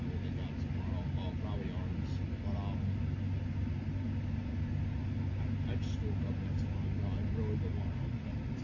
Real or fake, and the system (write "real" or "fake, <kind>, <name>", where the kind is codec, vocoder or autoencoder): real